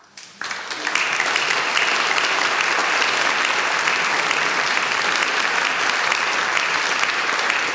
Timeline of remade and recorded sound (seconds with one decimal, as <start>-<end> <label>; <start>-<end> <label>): 0.0-7.7 recorded